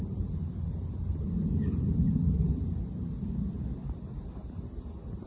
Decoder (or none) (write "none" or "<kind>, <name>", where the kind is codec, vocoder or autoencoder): none